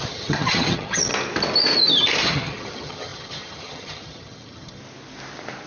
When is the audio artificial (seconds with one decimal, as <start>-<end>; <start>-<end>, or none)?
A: 0.0-1.1; 2.2-4.8